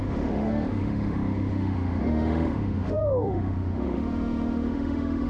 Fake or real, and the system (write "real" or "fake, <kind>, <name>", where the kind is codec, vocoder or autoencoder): fake, autoencoder, DAC-VAE